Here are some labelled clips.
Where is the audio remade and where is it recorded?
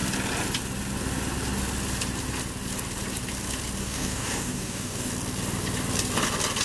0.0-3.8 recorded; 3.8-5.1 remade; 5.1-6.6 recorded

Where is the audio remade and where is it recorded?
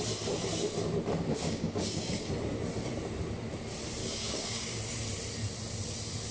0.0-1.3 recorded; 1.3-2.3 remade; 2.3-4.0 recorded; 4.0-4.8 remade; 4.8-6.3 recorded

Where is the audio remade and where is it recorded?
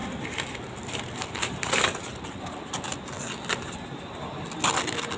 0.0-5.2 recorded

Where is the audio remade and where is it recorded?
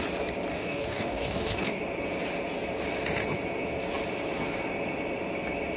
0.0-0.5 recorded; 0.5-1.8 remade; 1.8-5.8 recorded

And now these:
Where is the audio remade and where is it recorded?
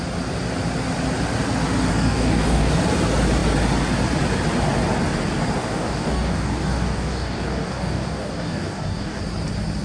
0.0-1.9 recorded; 1.9-2.7 remade; 2.7-5.6 recorded; 5.6-9.2 remade; 9.2-9.8 recorded